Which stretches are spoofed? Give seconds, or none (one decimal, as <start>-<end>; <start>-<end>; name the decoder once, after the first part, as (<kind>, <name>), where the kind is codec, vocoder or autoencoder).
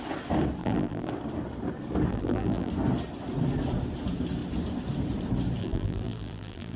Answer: 0.6-1.1 (vocoder, BigVGAN v2); 2.1-2.7; 5.6-6.8